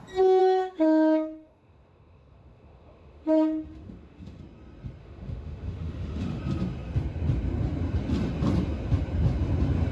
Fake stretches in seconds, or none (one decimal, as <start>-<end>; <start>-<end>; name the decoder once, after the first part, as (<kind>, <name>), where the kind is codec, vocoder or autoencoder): 0.4-4.4 (autoencoder, DAC-VAE); 5.0-6.4